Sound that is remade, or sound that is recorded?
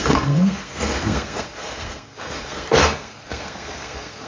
remade